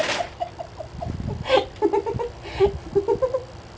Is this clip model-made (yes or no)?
no